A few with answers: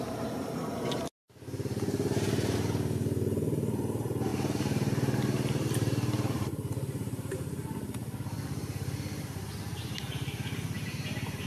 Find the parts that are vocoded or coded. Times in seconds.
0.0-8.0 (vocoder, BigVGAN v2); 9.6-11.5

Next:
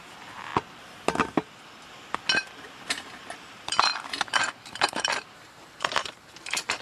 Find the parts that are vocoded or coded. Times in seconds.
0.0-0.5 (vocoder, BigVGAN v2); 2.6-6.8

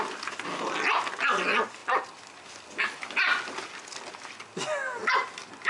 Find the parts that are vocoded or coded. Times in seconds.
none

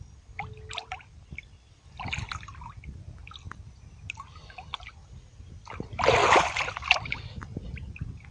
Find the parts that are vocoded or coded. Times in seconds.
5.0-5.7 (vocoder, BigVGAN v2); 6.2-7.3

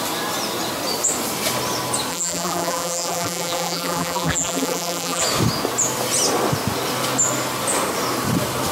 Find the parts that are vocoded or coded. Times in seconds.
2.1-5.2 (vocoder, BigVGAN v2)